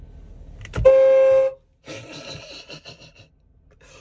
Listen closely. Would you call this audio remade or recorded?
recorded